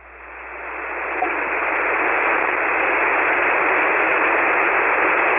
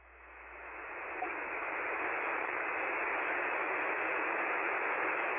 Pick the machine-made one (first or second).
second